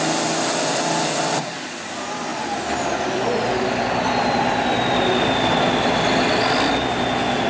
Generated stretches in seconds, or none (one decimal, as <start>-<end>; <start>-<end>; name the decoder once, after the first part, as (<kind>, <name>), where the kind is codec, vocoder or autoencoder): none